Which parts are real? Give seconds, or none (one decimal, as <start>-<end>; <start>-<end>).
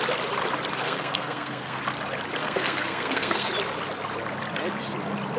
0.0-0.8; 1.8-2.4; 3.5-5.4